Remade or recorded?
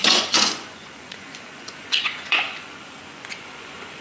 remade